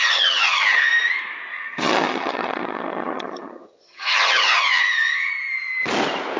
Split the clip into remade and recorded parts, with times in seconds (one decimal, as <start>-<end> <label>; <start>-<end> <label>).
0.0-0.9 remade; 0.9-1.5 recorded; 1.5-5.3 remade; 5.3-6.4 recorded